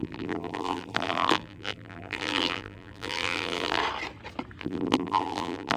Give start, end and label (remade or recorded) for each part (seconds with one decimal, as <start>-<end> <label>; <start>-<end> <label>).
0.0-3.8 remade; 3.8-4.6 recorded; 4.6-5.8 remade